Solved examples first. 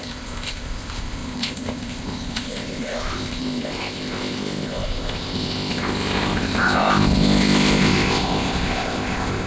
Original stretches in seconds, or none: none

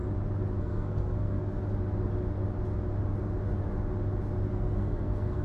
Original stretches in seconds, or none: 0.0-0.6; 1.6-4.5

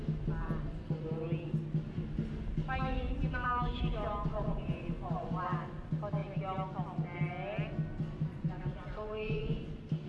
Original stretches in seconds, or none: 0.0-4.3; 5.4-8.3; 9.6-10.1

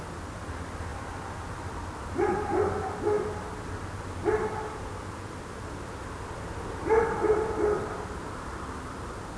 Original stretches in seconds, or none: 0.0-9.4

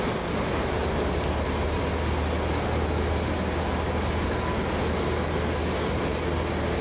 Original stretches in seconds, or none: 0.0-6.8